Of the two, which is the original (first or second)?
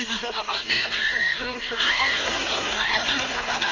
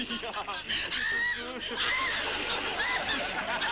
second